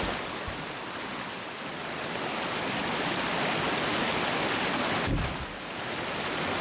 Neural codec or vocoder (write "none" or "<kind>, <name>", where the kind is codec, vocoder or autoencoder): none